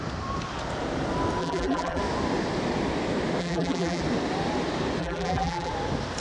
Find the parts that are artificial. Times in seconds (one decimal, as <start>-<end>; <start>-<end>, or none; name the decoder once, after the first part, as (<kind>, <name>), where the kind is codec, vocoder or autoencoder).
1.4-2.0 (vocoder, BigVGAN v2); 3.4-4.0; 5.0-5.7